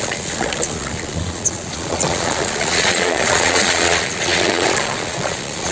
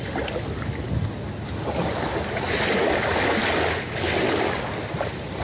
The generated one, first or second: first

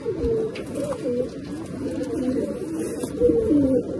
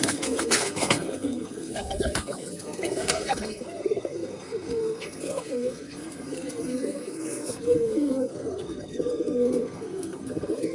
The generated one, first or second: second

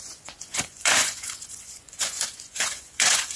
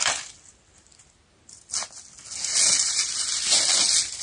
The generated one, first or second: first